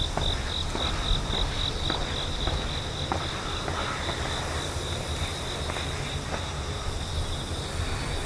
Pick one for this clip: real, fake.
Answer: real